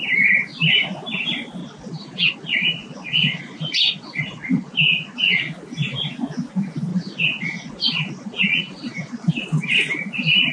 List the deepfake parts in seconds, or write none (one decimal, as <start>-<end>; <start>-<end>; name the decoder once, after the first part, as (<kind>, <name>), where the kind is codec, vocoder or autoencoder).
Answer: 1.6-5.4 (vocoder, Vocos); 6.9-9.3